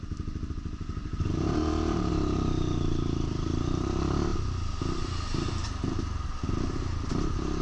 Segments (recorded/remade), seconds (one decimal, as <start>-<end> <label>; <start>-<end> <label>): 0.0-1.0 recorded; 1.0-2.1 remade; 2.1-7.6 recorded